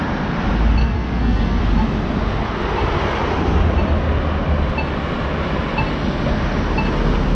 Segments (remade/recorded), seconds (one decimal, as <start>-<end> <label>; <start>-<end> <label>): 0.0-0.8 recorded; 0.8-1.6 remade; 1.6-7.3 recorded